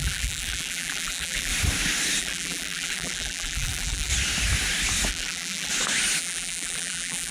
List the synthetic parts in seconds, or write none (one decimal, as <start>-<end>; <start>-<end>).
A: 0.0-1.5; 2.2-4.1; 5.1-5.7; 6.2-7.3

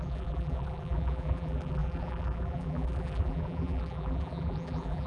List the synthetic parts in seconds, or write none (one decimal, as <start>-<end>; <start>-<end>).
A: 0.0-5.1

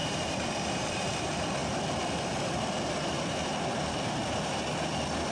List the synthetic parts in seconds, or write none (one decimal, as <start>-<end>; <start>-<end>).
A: 0.0-1.2